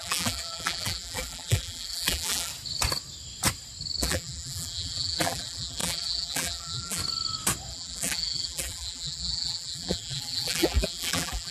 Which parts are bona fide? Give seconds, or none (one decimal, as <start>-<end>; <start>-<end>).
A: 2.5-4.0; 7.0-7.7

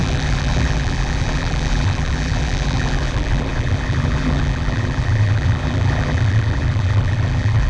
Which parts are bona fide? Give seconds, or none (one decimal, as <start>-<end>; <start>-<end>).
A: none

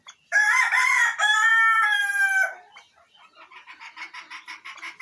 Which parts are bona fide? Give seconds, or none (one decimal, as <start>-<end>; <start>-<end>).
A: 0.0-5.0

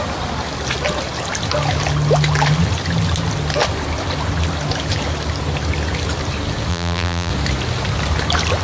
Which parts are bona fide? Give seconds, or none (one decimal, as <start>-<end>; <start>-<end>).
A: 0.0-6.7; 7.3-8.6

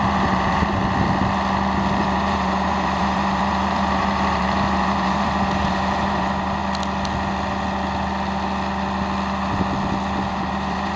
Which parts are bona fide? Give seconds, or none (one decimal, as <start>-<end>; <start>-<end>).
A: 0.8-2.0; 6.6-10.3

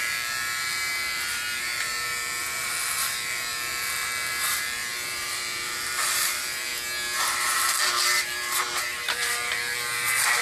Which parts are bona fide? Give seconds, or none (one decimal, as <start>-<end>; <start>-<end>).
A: 6.7-7.5

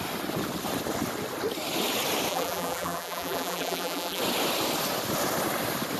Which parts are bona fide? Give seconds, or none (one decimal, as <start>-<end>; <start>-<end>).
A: 0.0-2.3; 4.2-6.0

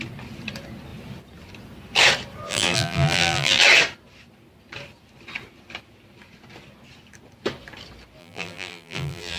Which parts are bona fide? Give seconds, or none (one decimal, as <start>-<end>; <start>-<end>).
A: 0.0-2.5; 3.6-8.2